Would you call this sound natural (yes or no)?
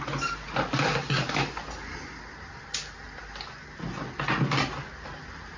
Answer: yes